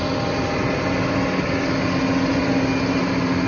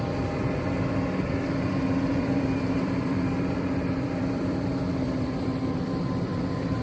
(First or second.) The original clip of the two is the first